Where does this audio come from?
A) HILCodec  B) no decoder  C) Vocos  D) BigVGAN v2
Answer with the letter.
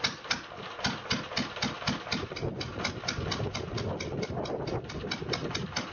B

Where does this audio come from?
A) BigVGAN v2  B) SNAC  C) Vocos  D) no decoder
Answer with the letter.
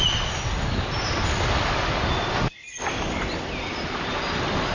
D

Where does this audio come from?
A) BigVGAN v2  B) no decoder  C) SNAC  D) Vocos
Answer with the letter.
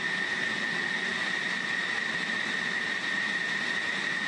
B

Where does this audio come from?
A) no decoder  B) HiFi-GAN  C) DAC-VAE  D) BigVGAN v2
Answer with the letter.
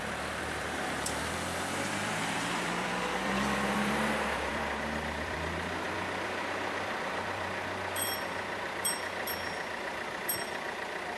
D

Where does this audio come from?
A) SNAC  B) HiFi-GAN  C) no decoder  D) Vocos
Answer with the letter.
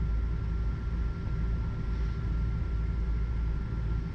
C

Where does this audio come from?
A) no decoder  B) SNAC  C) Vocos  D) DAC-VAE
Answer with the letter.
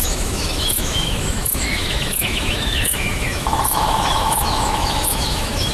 D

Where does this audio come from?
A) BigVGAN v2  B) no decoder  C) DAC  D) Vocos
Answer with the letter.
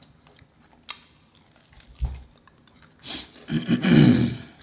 B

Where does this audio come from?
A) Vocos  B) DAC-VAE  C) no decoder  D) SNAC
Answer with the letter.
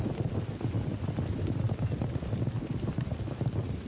C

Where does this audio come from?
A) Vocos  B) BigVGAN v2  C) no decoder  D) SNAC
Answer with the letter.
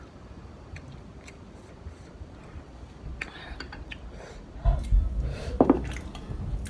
C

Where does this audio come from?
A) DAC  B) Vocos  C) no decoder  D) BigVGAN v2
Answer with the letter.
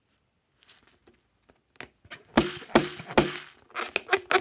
C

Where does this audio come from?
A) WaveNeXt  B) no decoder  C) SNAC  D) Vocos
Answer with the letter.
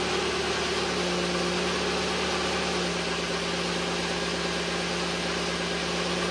B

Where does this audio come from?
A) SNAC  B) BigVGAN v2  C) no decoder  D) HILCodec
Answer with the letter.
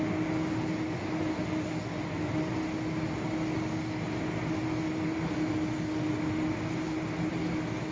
C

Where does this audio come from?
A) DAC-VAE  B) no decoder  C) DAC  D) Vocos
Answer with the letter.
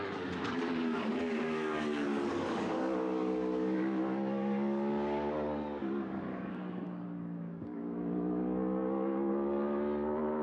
C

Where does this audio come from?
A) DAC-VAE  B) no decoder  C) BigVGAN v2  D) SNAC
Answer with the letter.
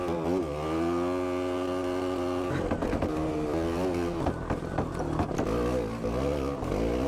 B